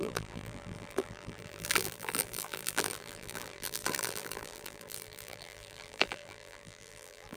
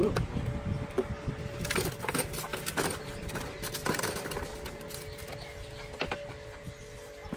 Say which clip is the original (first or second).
second